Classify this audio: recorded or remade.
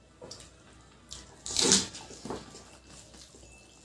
recorded